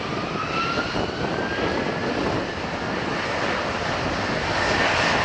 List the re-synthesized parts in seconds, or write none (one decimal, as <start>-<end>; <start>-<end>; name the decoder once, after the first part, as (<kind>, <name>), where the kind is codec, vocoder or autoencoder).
none